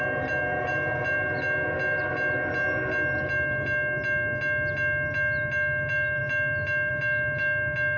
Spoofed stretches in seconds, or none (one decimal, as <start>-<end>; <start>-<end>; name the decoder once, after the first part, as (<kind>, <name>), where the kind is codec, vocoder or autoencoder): none